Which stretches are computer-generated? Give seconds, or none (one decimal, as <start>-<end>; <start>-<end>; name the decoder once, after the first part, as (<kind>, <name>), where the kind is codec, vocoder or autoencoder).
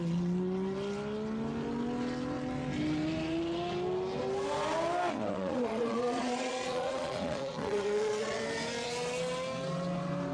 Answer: 5.1-8.4 (vocoder, Vocos)